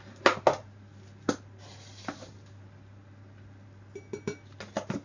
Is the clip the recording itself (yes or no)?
yes